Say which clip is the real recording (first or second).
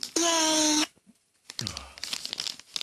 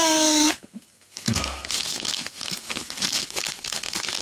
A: first